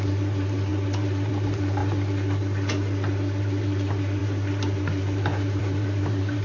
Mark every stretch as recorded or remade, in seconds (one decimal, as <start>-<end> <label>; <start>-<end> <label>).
0.0-1.8 remade; 1.8-3.4 recorded; 3.4-6.4 remade